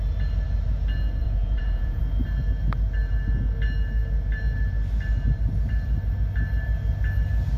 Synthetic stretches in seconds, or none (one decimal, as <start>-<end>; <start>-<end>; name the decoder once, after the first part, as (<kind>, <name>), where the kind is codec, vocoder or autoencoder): 1.2-2.0 (vocoder, Vocos)